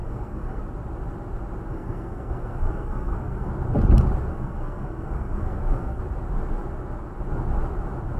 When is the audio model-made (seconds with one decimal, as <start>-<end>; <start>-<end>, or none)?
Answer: 0.0-0.6; 1.7-3.5; 4.3-6.0